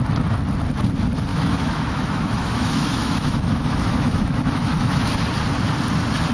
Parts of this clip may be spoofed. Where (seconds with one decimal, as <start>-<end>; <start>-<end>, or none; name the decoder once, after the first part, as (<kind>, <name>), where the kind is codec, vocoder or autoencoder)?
1.3-5.1 (autoencoder, DAC-VAE)